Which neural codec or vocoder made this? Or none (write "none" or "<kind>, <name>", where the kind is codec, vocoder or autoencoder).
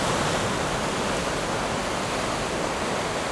none